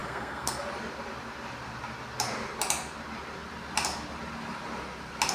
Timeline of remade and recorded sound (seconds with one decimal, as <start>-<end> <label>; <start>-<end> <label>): 0.0-0.6 remade; 0.6-5.3 recorded